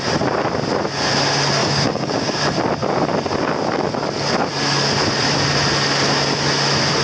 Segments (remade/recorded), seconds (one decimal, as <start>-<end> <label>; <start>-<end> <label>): 0.0-1.6 recorded; 1.6-2.4 remade; 2.4-7.0 recorded